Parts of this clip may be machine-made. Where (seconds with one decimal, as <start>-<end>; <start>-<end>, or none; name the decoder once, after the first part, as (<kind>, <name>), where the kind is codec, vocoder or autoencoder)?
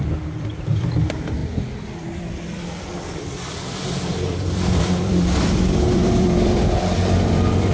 0.0-7.7 (vocoder, BigVGAN v2)